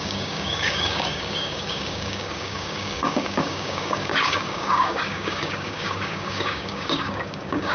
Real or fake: fake